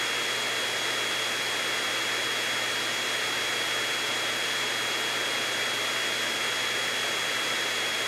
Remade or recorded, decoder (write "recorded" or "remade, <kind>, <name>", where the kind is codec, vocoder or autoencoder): recorded